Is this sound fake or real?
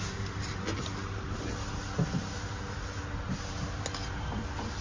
real